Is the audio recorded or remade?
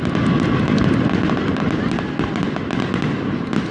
recorded